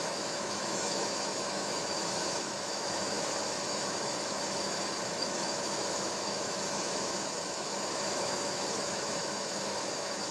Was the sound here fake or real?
fake